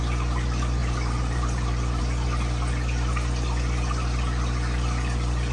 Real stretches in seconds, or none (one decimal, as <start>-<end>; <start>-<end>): 0.0-0.8; 2.0-5.5